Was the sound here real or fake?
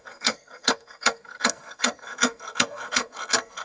fake